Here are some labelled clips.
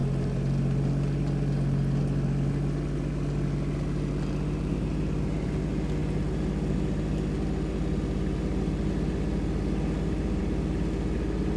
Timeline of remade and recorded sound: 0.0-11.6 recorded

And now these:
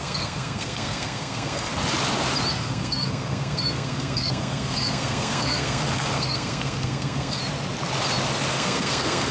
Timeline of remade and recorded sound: 0.0-1.7 remade; 1.7-2.5 recorded; 2.5-7.4 remade; 7.4-8.5 recorded; 8.5-9.3 remade

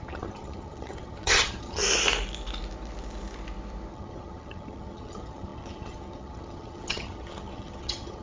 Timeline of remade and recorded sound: 0.0-1.8 remade; 1.8-3.9 recorded; 3.9-8.2 remade

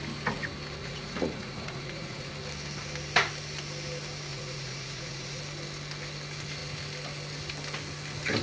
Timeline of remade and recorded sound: 0.0-0.8 recorded; 0.8-2.3 remade; 2.3-4.3 recorded; 4.3-5.4 remade; 5.4-8.4 recorded

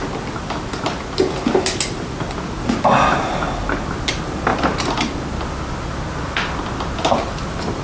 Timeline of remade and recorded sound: 0.0-4.5 recorded; 4.5-5.1 remade; 5.1-7.8 recorded

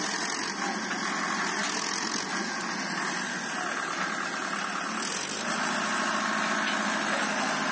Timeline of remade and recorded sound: 0.0-7.7 recorded

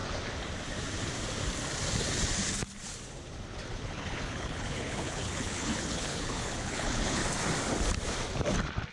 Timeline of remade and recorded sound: 0.0-3.7 recorded; 3.7-7.2 remade; 7.2-8.9 recorded

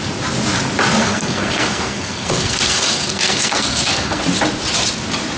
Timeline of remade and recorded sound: 0.0-1.0 recorded; 1.0-4.2 remade; 4.2-5.4 recorded